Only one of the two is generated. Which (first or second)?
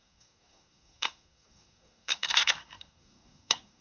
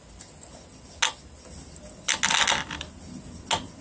first